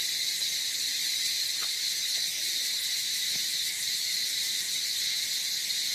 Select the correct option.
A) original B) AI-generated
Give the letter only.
A